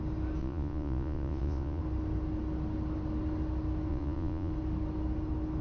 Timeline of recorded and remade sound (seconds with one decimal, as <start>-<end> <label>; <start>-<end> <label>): 0.0-0.4 recorded; 0.4-1.8 remade; 1.8-3.9 recorded; 3.9-4.5 remade; 4.5-5.6 recorded